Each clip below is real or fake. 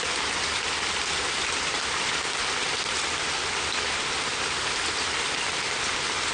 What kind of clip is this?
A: real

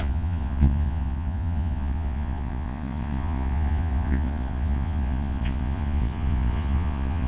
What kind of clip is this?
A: fake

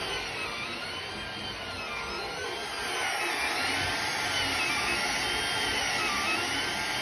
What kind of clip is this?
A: real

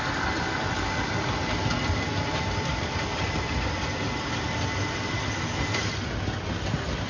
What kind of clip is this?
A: real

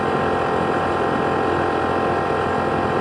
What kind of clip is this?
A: real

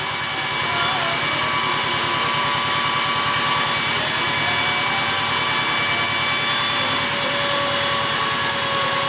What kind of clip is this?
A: real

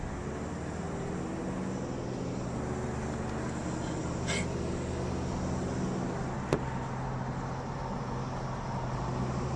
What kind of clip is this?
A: real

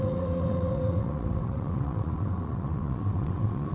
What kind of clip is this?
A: fake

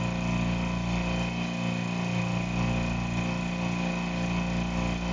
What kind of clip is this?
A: real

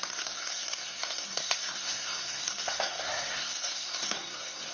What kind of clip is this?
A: fake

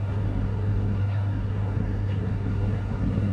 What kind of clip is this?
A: fake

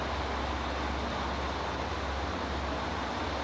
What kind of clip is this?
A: real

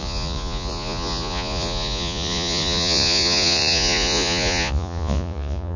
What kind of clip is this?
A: fake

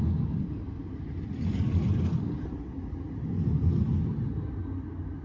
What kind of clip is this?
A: real